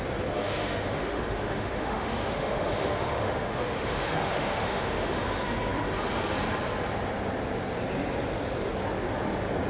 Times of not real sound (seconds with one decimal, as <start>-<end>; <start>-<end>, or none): 0.4-5.2